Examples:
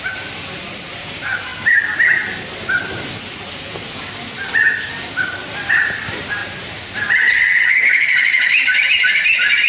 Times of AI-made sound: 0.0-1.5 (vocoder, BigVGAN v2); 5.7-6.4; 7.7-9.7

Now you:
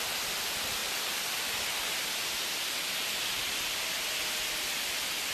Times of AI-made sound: none

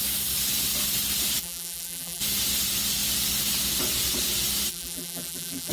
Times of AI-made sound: 1.4-2.2 (vocoder, BigVGAN v2); 4.7-5.7